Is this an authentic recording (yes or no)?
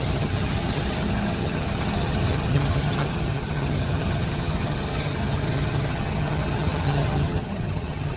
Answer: no